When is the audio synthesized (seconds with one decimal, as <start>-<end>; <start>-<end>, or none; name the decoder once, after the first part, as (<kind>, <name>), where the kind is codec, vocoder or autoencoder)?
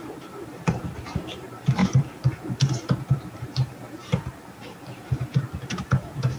0.0-6.4 (vocoder, BigVGAN v2)